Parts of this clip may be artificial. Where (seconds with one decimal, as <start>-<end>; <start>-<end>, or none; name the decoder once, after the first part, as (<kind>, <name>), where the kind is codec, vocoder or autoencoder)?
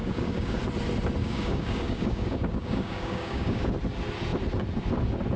0.0-0.6 (codec, DAC); 1.2-3.7